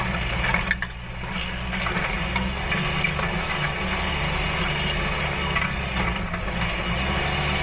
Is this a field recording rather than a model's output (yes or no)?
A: yes